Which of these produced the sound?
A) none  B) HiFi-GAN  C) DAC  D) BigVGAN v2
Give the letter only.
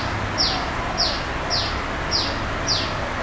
A